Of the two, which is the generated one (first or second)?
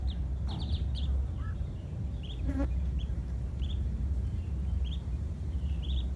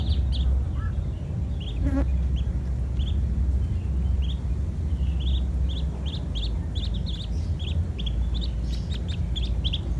first